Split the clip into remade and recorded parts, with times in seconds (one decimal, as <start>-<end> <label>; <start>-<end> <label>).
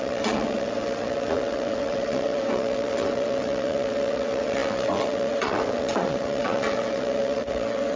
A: 0.0-8.0 remade